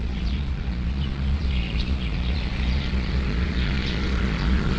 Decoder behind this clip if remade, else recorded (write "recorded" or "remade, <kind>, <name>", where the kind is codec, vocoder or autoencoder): remade, vocoder, Vocos